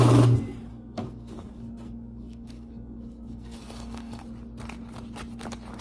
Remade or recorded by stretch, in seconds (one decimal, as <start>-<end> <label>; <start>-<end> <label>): 0.0-0.7 recorded; 0.7-4.2 remade; 4.2-5.8 recorded